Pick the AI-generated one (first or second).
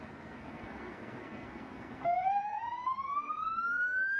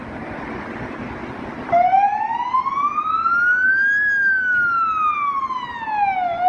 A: first